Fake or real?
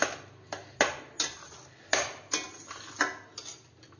real